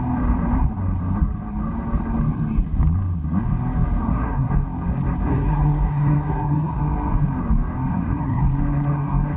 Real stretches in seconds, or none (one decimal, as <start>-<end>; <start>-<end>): 0.0-4.0; 4.5-5.3; 6.8-7.9; 8.4-9.4